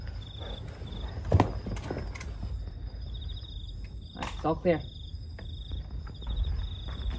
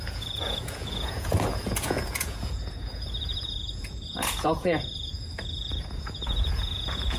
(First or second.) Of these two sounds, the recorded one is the first